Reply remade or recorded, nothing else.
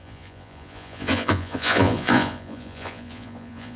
remade